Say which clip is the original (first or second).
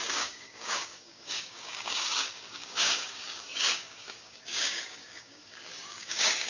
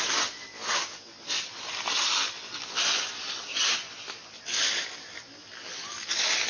second